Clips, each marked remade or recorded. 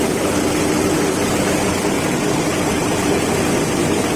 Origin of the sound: recorded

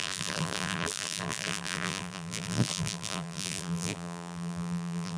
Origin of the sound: remade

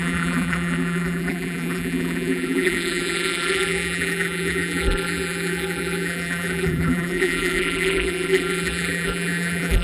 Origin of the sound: remade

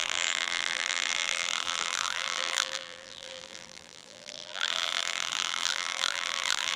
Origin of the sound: remade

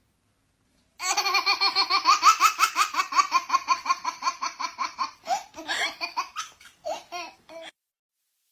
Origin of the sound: recorded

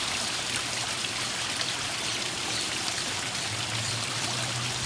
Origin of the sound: remade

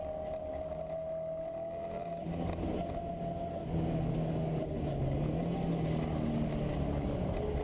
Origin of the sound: recorded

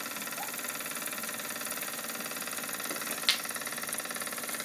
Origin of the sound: recorded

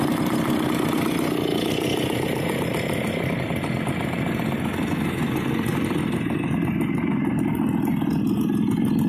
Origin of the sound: recorded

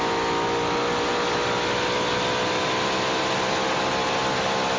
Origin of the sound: recorded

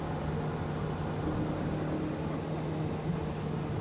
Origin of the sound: recorded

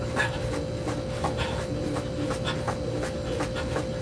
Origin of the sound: recorded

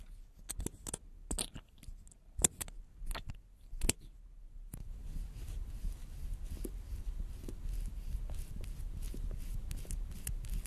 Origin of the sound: recorded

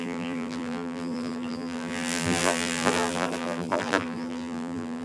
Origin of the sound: remade